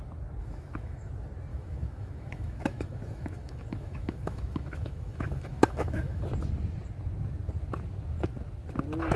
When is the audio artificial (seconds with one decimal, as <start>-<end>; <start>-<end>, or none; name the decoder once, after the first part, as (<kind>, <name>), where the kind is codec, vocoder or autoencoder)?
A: 0.4-1.1 (autoencoder, DAC-VAE); 1.5-6.2